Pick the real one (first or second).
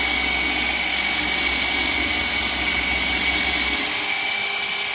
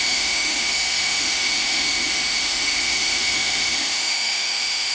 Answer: first